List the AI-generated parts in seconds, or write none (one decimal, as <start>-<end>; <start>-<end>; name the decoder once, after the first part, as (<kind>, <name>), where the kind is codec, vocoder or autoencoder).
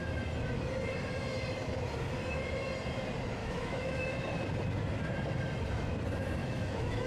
3.4-4.1 (autoencoder, DAC-VAE); 6.4-7.1